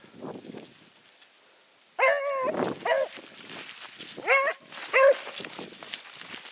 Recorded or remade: recorded